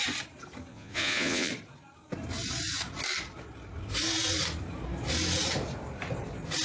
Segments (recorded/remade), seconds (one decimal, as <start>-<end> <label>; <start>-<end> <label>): 0.0-0.7 recorded; 0.7-1.5 remade; 1.5-6.6 recorded